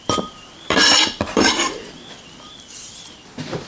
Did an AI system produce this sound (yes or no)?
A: yes